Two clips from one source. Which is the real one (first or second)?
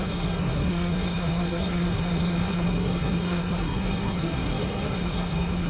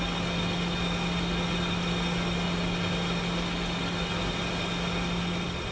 second